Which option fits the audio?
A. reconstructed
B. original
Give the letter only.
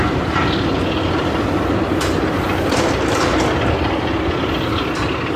B